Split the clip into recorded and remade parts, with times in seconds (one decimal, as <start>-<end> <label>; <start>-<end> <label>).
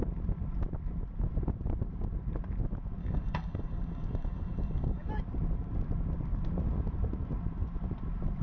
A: 0.0-3.0 recorded; 3.0-5.1 remade; 5.1-8.4 recorded